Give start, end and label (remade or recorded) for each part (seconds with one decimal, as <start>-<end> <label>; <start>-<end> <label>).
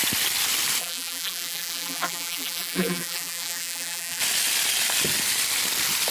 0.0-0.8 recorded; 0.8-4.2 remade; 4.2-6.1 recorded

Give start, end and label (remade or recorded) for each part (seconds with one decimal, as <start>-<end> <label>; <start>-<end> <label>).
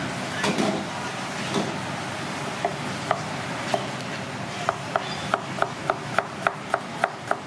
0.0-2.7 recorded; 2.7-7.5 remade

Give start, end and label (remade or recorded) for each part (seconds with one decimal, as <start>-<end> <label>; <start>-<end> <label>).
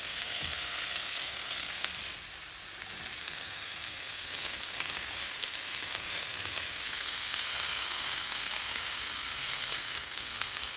0.0-1.9 remade; 1.9-3.2 recorded; 3.2-10.8 remade